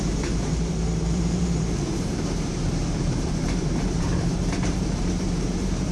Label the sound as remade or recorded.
remade